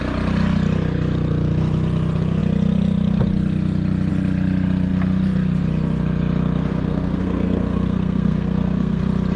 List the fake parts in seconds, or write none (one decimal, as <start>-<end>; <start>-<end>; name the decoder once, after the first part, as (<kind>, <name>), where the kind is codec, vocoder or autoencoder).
6.7-9.0 (codec, SNAC)